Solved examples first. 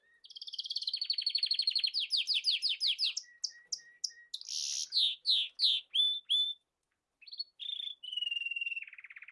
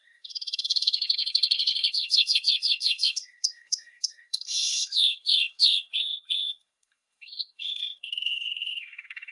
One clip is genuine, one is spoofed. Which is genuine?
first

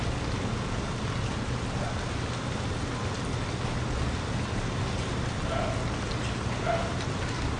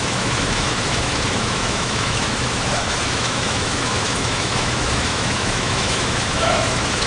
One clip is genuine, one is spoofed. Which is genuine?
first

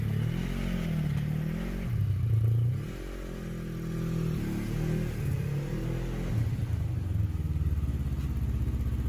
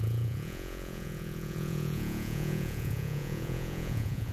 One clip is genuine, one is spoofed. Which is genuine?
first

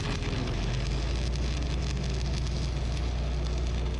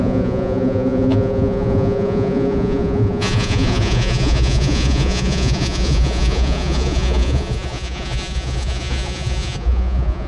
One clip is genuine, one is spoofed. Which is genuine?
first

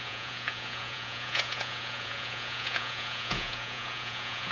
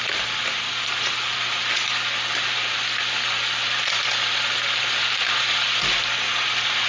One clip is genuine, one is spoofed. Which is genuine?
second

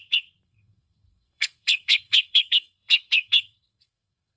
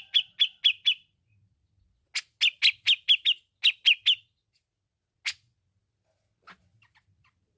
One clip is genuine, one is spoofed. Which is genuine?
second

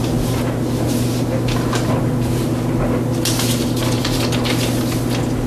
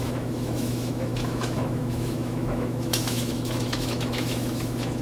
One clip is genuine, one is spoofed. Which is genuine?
first